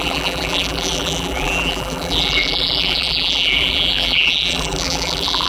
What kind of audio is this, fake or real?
fake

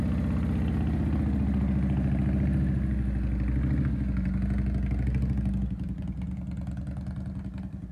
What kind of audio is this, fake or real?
real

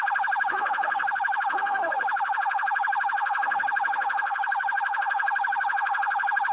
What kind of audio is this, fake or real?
fake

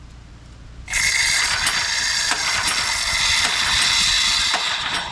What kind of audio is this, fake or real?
real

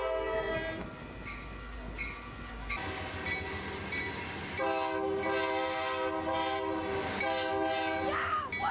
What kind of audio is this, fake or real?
real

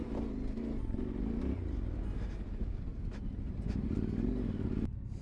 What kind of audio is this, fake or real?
real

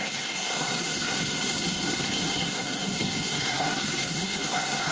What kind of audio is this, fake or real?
fake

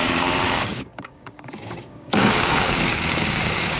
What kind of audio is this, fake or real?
fake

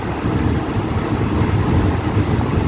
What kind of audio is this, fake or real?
real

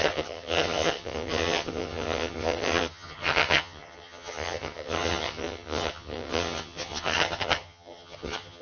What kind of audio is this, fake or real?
fake